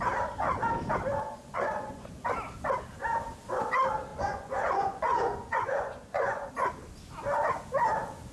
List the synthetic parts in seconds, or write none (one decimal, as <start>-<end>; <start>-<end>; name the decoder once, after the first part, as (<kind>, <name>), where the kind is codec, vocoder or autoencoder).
1.1-2.2 (vocoder, Vocos); 4.1-6.5